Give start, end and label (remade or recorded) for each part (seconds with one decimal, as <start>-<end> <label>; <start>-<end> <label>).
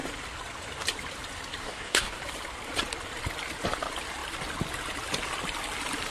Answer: 0.0-1.6 recorded; 1.6-2.2 remade; 2.2-6.1 recorded